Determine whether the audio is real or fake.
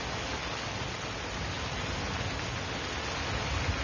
real